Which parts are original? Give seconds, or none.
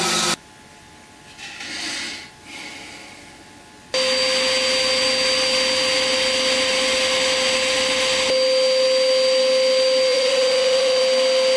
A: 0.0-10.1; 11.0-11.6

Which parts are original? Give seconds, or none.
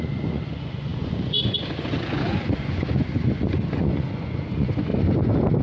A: 4.9-5.6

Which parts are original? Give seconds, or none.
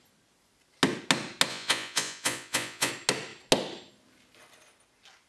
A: 0.0-1.5; 2.9-5.3